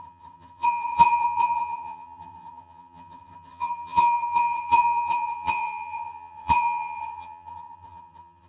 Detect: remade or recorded remade